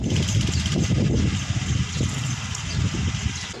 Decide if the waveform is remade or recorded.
recorded